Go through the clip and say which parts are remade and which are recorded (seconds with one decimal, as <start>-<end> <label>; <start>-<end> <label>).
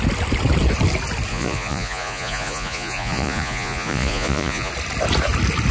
0.0-1.3 recorded; 1.3-4.7 remade; 4.7-5.7 recorded